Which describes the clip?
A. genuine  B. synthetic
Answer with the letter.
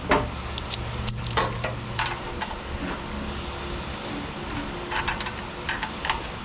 A